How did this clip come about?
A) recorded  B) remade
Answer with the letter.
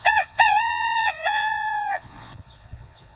B